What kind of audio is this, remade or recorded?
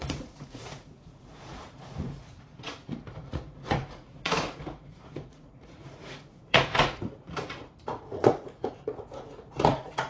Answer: remade